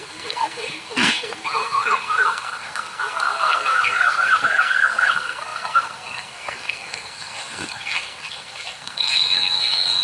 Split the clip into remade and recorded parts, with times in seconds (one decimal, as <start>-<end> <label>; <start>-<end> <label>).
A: 0.0-10.0 remade